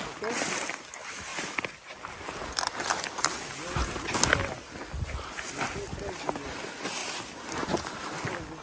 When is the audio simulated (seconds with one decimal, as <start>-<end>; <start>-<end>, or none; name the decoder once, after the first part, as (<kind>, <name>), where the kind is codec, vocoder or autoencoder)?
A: none